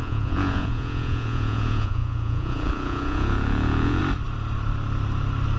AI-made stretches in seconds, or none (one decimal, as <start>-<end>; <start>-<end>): 0.0-4.0